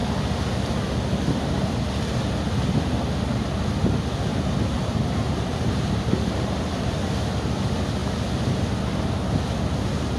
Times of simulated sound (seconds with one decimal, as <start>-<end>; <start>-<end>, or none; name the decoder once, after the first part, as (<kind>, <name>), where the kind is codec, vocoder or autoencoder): 4.3-6.9 (vocoder, BigVGAN v2); 8.0-8.9